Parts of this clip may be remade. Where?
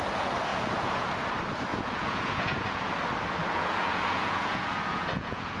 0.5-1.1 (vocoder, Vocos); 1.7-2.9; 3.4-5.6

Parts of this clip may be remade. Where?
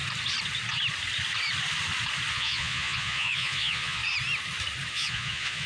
2.3-4.0 (vocoder, Vocos); 4.9-5.7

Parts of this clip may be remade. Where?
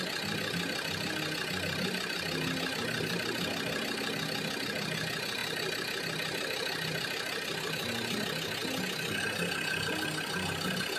none